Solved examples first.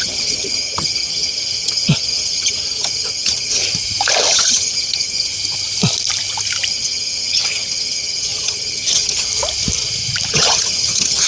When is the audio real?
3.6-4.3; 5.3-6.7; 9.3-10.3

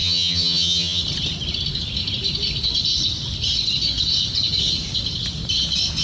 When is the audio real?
1.0-6.0

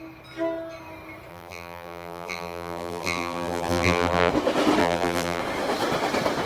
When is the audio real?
0.0-1.3; 4.3-4.8; 5.4-6.5